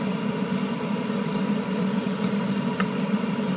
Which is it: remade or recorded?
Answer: remade